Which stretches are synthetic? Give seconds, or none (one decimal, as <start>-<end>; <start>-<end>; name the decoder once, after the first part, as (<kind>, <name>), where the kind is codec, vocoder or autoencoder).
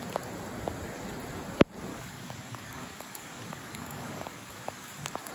1.9-5.3 (codec, DAC)